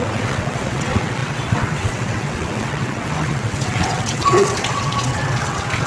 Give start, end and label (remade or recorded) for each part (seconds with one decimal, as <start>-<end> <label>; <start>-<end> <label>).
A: 0.0-5.9 remade